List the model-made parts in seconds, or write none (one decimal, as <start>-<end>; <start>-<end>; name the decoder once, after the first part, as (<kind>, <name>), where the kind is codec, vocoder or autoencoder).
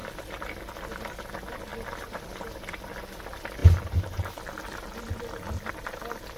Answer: none